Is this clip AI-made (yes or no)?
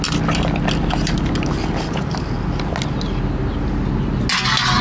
no